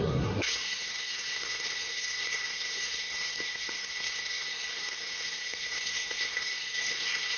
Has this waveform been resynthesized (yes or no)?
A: yes